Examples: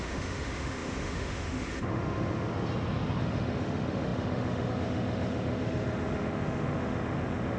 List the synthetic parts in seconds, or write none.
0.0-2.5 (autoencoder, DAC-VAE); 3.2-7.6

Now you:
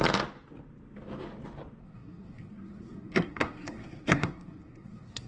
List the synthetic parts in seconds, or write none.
1.8-5.3 (codec, SNAC)

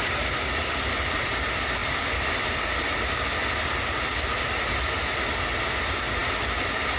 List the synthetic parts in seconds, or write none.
none

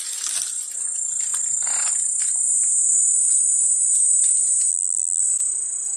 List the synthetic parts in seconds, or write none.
4.7-5.2 (vocoder, BigVGAN v2)

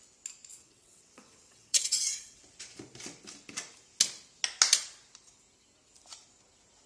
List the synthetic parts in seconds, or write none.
0.5-2.4 (vocoder, WaveNeXt)